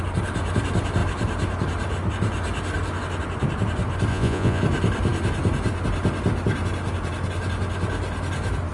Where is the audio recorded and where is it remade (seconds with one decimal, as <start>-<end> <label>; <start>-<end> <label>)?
0.0-4.1 recorded; 4.1-4.6 remade; 4.6-8.7 recorded